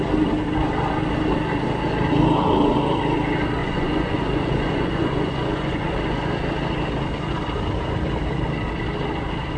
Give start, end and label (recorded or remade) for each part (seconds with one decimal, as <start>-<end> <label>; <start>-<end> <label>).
0.0-3.6 recorded; 3.6-6.3 remade; 6.3-9.6 recorded